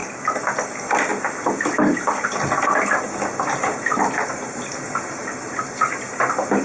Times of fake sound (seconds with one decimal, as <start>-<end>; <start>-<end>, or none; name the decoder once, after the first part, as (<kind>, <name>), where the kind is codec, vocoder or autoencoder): none